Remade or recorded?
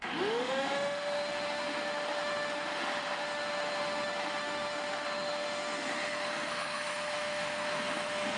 remade